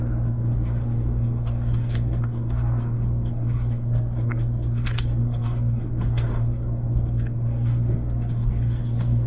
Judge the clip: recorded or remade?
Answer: remade